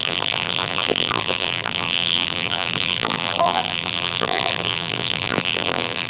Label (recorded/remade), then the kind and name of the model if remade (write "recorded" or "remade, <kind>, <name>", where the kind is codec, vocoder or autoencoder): remade, vocoder, BigVGAN v2